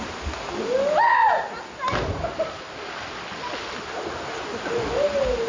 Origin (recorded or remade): recorded